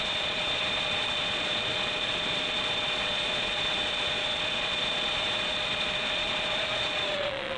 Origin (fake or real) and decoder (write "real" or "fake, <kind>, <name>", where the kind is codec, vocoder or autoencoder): fake, vocoder, Vocos